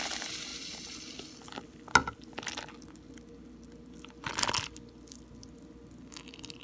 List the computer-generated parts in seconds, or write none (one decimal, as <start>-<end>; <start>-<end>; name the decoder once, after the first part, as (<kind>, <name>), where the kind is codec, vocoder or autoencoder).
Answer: 0.5-1.6 (vocoder, BigVGAN v2)